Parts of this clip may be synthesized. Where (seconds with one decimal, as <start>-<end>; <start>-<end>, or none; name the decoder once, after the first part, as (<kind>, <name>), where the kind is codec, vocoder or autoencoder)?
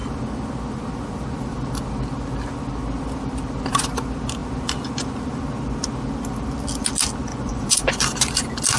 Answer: 7.3-7.9 (vocoder, Vocos)